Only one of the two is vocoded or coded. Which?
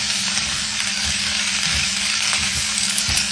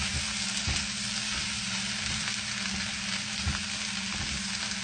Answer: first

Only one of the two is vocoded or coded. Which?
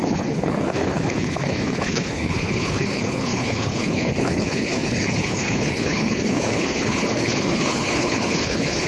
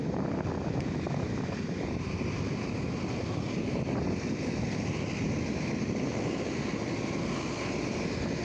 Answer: first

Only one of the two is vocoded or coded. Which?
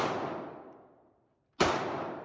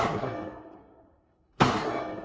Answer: second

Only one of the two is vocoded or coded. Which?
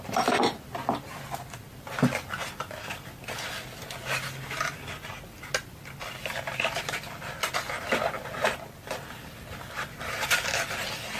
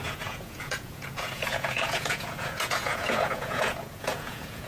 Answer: second